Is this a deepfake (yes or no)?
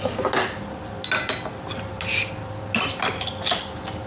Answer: no